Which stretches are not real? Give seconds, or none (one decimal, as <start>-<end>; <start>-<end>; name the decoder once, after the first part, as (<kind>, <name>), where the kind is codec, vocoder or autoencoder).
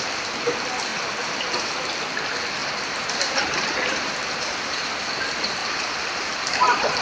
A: 0.9-1.7 (vocoder, BigVGAN v2); 2.6-5.1; 5.6-7.0